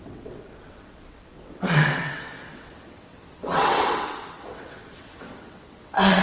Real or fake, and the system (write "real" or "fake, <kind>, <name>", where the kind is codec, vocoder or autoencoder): fake, vocoder, WaveNeXt